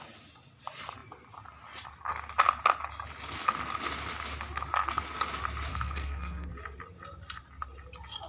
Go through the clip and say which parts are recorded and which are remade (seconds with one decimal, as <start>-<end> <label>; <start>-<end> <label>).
0.0-5.7 recorded; 5.7-6.5 remade; 6.5-8.3 recorded